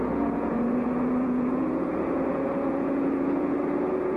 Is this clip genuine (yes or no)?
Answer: no